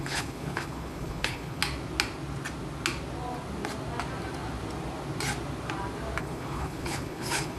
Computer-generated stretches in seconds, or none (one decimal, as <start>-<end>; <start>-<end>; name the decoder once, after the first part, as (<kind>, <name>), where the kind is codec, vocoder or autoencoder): 0.0-1.6 (codec, HILCodec); 6.2-7.6